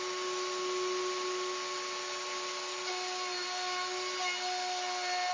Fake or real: real